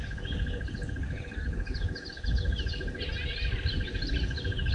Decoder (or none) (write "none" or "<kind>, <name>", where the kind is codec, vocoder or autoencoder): none